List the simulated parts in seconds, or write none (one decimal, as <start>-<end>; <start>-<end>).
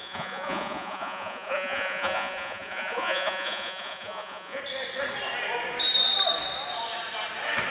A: 0.0-4.6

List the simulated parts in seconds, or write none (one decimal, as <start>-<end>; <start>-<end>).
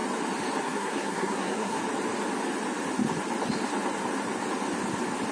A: 0.6-1.8